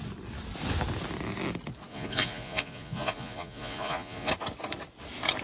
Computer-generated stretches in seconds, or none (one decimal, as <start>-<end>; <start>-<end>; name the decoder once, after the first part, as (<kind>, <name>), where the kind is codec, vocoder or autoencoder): 1.9-4.3 (vocoder, Vocos)